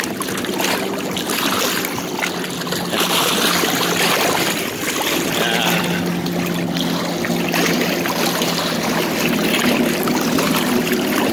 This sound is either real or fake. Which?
real